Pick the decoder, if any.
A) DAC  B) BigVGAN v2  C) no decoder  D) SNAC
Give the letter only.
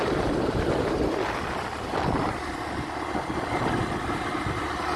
C